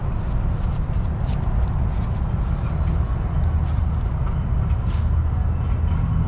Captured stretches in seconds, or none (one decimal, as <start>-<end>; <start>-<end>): 0.0-6.3